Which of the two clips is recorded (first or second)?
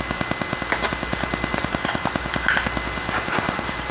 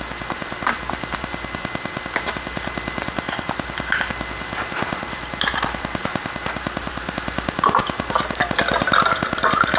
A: first